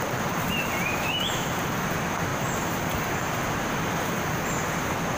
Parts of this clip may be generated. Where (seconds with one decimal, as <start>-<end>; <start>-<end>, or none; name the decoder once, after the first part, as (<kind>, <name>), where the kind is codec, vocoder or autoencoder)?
0.9-1.5 (autoencoder, DAC-VAE)